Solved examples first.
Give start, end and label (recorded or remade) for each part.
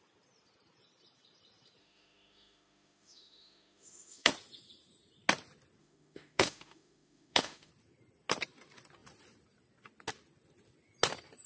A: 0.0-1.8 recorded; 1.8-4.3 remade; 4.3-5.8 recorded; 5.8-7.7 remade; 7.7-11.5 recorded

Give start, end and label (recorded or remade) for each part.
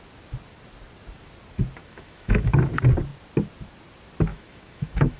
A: 0.0-1.8 recorded; 1.8-2.6 remade; 2.6-4.3 recorded; 4.3-5.2 remade